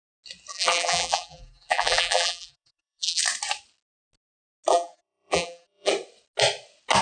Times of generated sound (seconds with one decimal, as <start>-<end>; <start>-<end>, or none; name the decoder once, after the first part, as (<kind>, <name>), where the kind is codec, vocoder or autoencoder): 0.5-3.2 (vocoder, BigVGAN v2); 4.7-5.9